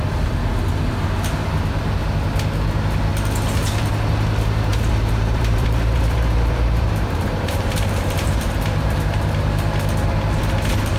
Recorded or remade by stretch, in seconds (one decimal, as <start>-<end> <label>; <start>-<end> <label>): 0.0-4.7 recorded; 4.7-9.0 remade; 9.0-11.0 recorded